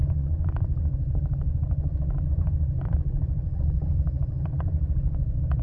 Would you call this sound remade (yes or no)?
yes